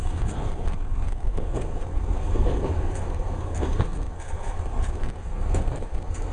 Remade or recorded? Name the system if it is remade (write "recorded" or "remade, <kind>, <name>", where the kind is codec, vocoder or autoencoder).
remade, codec, SNAC